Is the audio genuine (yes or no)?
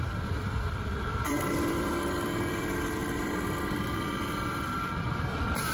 no